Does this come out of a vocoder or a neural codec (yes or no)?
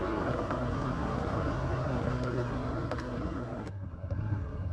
yes